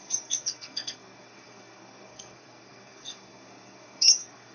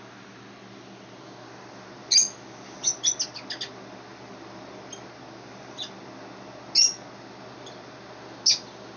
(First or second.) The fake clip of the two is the first